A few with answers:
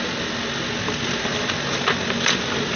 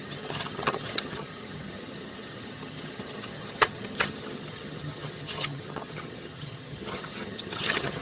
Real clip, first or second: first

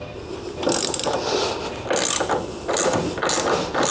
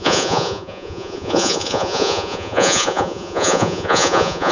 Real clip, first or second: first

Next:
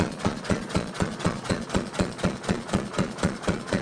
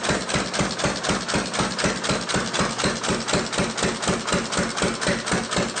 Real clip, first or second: second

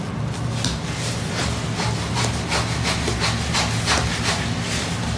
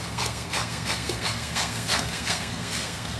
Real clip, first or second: first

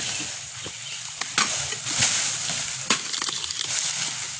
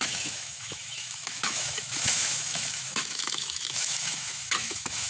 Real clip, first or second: first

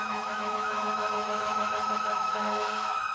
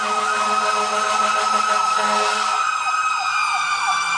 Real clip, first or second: second